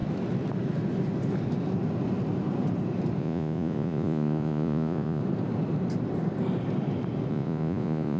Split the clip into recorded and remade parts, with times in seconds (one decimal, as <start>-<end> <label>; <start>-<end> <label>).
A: 0.0-3.2 recorded; 3.2-5.2 remade; 5.2-7.3 recorded; 7.3-8.2 remade